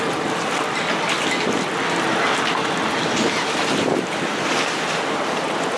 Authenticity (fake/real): real